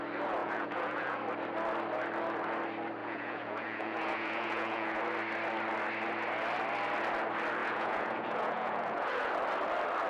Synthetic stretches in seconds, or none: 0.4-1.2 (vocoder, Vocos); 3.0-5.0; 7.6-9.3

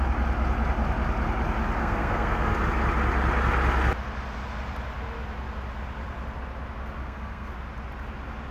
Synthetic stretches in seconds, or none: 1.8-2.6 (codec, SNAC); 7.0-7.5

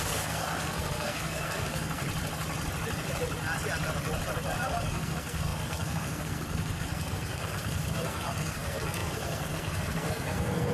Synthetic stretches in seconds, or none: 0.0-2.0 (codec, SNAC); 4.6-10.7

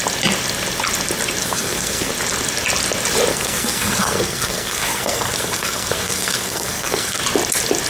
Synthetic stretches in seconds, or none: 1.4-2.1 (codec, SNAC); 3.3-7.2